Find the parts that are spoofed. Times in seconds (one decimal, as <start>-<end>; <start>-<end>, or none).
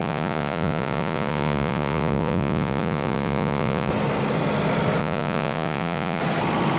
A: 0.0-3.9; 5.0-6.2